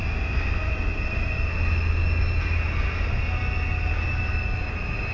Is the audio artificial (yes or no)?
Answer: no